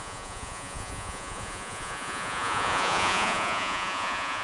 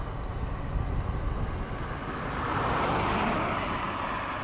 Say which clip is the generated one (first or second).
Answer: first